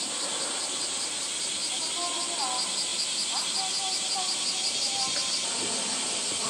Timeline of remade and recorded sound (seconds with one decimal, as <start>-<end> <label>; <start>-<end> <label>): 0.0-6.5 recorded